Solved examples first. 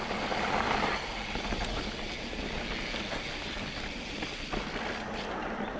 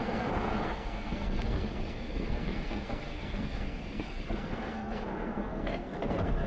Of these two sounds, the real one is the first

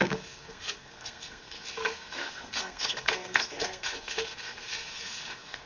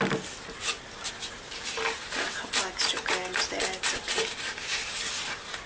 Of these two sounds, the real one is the second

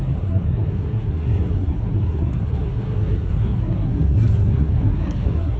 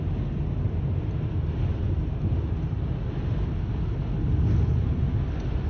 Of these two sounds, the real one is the second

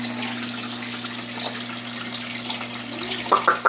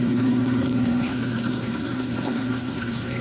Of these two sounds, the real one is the first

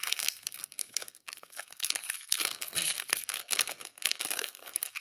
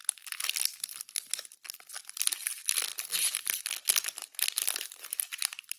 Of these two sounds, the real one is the second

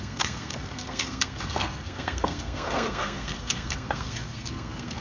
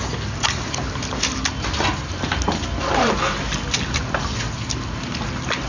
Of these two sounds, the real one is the second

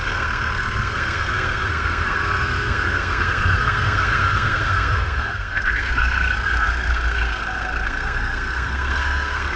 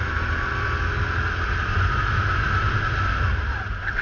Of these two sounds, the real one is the second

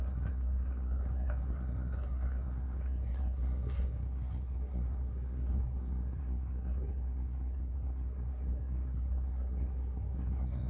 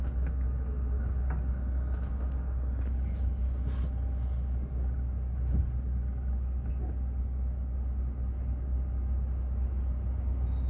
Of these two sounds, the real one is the second